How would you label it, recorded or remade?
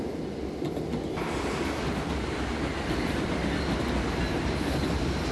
recorded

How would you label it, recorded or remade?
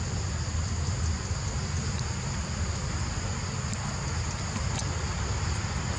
recorded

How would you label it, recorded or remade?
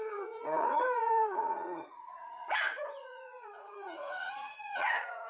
remade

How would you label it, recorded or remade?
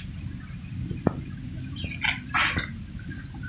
recorded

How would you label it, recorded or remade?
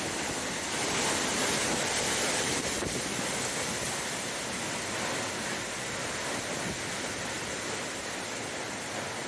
recorded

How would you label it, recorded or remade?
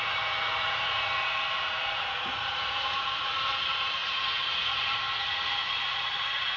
remade